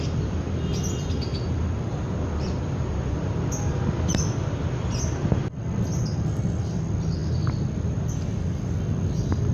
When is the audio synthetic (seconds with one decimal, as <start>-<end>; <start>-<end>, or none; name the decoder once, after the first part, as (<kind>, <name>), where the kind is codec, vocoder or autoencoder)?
none